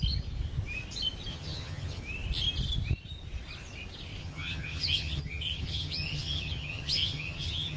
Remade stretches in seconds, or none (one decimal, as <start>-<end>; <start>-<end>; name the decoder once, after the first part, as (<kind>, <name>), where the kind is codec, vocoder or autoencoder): 1.3-2.0 (vocoder, HiFi-GAN); 4.2-7.8